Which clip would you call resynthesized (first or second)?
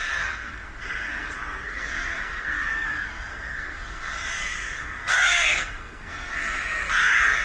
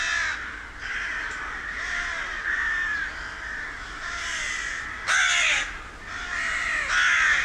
first